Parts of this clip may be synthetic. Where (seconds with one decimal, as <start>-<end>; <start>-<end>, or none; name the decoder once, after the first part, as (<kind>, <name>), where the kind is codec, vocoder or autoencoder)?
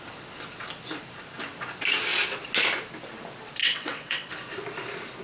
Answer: 3.6-4.3 (vocoder, WaveNeXt)